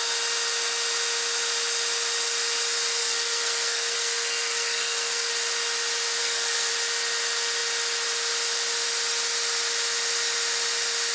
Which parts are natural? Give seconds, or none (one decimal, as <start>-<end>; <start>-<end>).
0.0-3.0; 5.3-6.2; 6.7-11.1